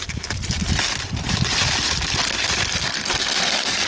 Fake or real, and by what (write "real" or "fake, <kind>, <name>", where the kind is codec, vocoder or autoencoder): fake, vocoder, BigVGAN v2